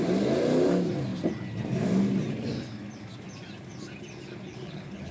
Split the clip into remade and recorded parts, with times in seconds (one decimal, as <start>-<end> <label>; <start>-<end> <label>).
0.0-4.5 recorded; 4.5-5.1 remade